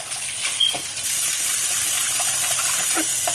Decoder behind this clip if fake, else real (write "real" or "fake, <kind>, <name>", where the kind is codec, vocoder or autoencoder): real